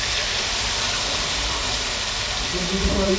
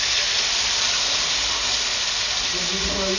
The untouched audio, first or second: second